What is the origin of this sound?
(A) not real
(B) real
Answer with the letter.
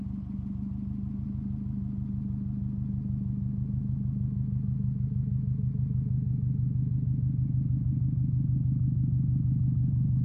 B